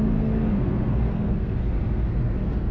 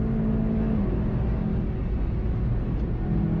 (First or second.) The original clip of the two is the second